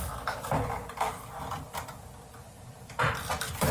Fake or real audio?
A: real